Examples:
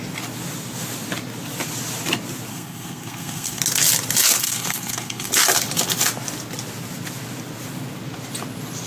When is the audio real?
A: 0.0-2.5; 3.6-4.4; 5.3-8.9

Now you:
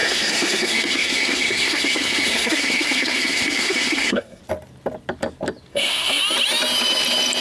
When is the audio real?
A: 4.4-5.7; 6.2-7.4

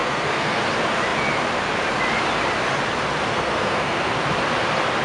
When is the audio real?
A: 0.6-3.3; 4.1-5.0

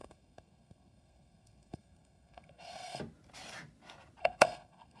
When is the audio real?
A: 3.0-4.2

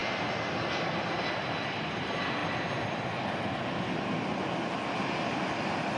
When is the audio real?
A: 0.0-6.0

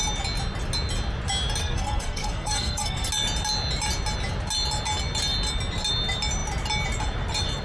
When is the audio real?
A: 0.0-1.6; 3.1-7.6